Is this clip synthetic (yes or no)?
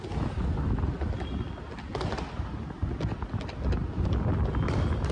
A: no